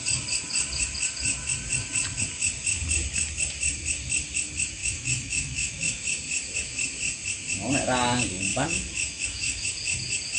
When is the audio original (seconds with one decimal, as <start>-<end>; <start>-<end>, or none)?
0.0-4.8; 6.0-8.5; 9.6-10.4